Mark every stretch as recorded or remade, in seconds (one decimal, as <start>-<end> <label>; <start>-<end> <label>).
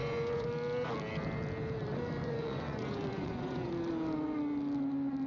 0.0-0.5 remade; 0.5-2.2 recorded; 2.2-3.7 remade; 3.7-5.3 recorded